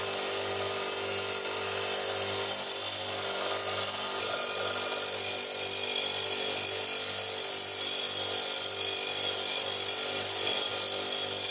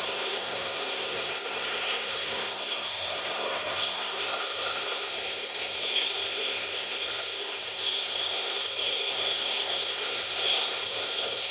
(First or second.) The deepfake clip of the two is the second